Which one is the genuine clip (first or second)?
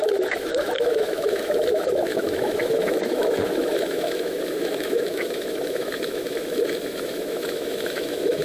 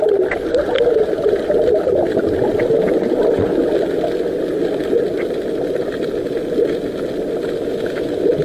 second